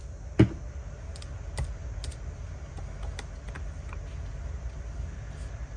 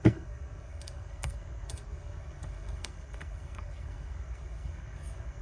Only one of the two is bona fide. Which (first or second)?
first